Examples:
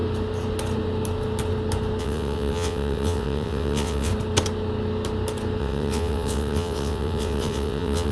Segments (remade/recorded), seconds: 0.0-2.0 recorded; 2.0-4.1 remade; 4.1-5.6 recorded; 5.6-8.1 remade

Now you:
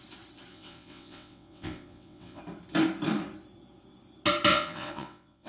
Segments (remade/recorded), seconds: 0.0-0.5 recorded; 0.5-2.4 remade; 2.4-4.5 recorded; 4.5-5.5 remade